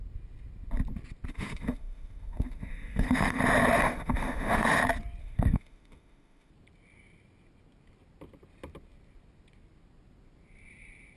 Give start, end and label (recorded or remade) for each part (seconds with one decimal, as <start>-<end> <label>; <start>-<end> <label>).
0.0-1.3 recorded; 1.3-3.4 remade; 3.4-3.8 recorded; 3.8-4.8 remade; 4.8-5.2 recorded; 5.2-6.5 remade; 6.5-11.2 recorded